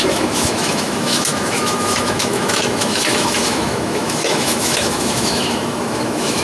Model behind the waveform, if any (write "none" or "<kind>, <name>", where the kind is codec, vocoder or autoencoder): autoencoder, DAC-VAE